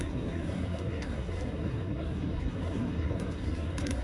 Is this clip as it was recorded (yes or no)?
no